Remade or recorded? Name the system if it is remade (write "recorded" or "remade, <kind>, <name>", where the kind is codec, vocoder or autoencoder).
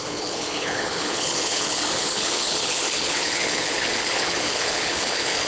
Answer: remade, codec, HILCodec